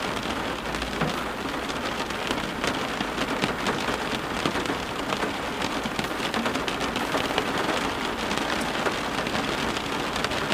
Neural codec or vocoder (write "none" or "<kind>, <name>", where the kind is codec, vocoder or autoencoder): none